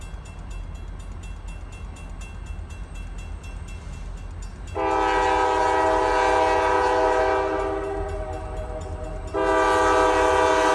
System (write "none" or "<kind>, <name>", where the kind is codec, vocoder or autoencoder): none